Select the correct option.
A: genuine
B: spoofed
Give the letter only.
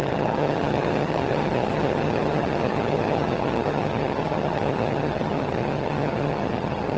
B